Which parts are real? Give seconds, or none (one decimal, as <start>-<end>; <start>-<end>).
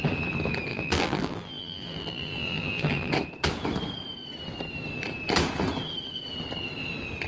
0.0-0.7; 3.1-7.3